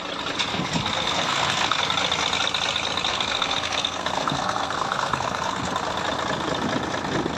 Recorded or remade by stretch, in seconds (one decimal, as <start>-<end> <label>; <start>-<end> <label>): 0.0-0.5 recorded; 0.5-1.8 remade; 1.8-3.1 recorded; 3.1-5.7 remade; 5.7-7.4 recorded